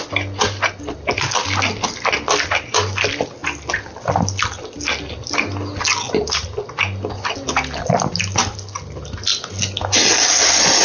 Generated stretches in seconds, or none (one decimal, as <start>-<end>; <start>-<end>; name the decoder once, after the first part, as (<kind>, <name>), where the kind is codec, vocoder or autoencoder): none